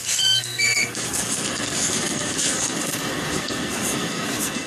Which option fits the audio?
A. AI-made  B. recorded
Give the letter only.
A